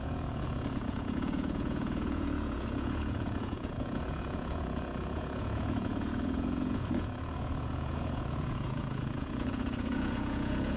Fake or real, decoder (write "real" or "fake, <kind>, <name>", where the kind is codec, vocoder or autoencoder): fake, vocoder, Vocos